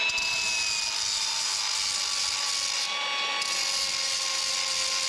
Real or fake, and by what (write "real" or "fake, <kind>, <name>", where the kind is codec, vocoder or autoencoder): real